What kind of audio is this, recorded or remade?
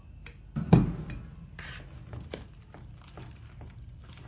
recorded